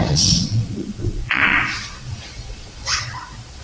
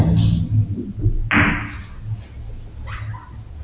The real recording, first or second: second